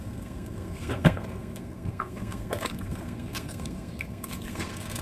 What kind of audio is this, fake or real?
fake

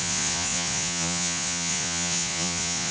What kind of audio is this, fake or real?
fake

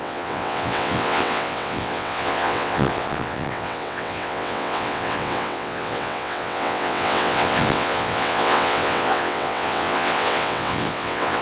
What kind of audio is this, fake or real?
fake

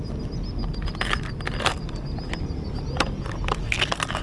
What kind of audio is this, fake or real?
real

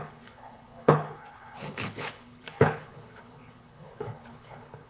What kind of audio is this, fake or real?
fake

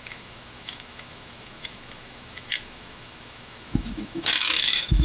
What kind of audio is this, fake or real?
fake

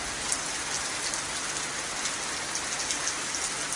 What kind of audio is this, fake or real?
real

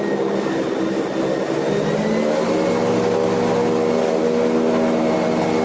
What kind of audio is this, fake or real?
real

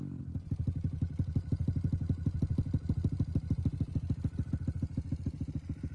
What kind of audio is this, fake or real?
real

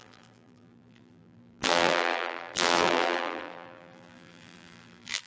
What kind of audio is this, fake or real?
fake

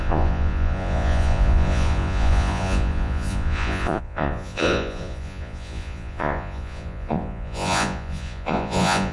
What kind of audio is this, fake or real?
fake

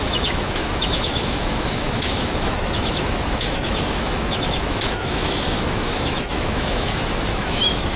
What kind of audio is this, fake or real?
fake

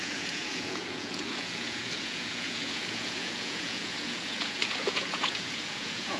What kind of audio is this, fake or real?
fake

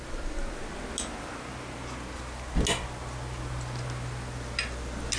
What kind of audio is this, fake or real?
real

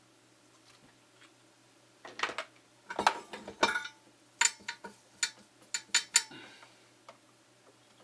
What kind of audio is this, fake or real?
real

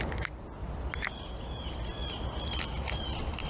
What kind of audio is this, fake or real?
real